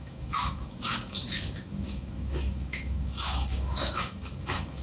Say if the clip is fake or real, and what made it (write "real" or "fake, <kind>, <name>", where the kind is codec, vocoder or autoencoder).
fake, autoencoder, DAC-VAE